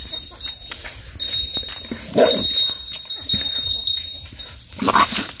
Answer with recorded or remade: recorded